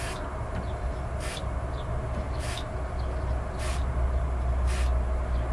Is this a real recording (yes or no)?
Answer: yes